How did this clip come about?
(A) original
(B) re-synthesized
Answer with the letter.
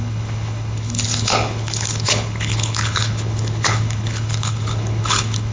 B